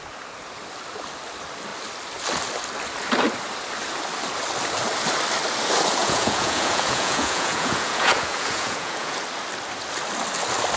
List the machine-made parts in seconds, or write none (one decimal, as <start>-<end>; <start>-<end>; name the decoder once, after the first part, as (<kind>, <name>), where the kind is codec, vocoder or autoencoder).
6.0-9.2 (vocoder, Vocos)